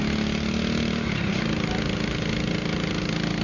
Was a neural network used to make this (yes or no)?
no